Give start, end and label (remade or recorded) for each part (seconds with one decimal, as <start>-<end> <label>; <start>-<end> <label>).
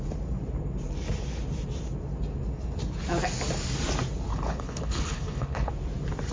0.0-4.3 recorded; 4.3-5.7 remade; 5.7-6.3 recorded